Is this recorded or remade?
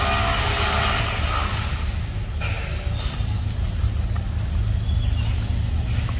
recorded